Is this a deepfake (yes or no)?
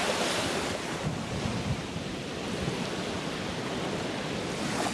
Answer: no